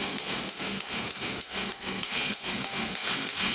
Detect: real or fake fake